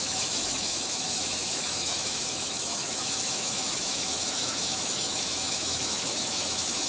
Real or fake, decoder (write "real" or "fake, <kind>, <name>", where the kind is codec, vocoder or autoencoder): fake, autoencoder, DAC-VAE